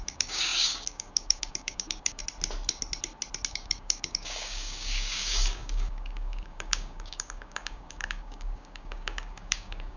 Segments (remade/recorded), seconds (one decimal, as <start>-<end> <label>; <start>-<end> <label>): 0.0-2.2 remade; 2.2-3.5 recorded; 3.5-10.0 remade